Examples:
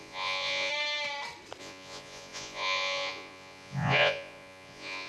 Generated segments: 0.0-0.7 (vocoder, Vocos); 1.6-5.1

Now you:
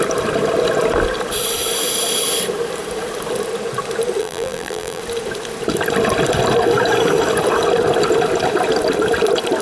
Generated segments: 4.2-5.0 (vocoder, BigVGAN v2)

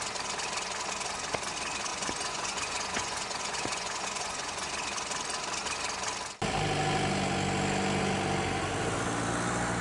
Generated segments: 1.9-4.7 (vocoder, Vocos)

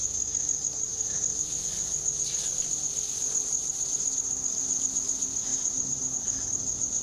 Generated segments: 0.9-1.6 (vocoder, BigVGAN v2); 5.5-6.1

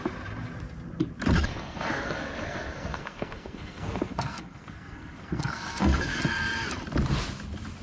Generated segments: 1.5-6.2 (codec, SNAC)

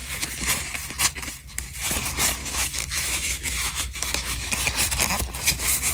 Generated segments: 2.4-4.5 (autoencoder, DAC-VAE)

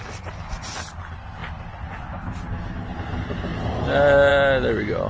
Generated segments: none